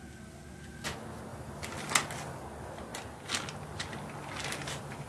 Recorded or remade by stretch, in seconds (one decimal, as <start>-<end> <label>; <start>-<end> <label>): 0.0-5.1 recorded